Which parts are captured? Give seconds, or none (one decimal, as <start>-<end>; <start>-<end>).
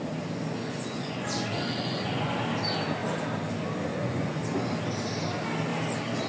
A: 0.0-0.6; 2.4-3.9; 4.4-6.3